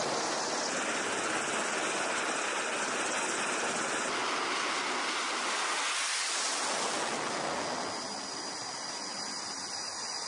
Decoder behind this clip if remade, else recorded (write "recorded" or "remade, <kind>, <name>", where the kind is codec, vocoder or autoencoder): recorded